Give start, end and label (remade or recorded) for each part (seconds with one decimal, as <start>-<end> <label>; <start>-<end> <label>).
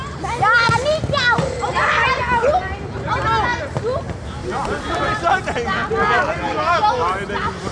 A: 0.0-7.7 recorded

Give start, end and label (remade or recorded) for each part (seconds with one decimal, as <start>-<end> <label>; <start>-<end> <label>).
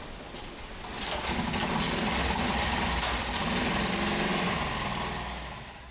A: 0.0-5.9 recorded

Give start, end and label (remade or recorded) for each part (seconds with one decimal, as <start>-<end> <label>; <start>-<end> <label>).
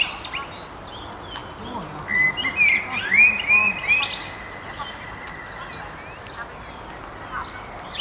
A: 0.0-8.0 recorded